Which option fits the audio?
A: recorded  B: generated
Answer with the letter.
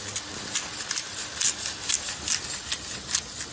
A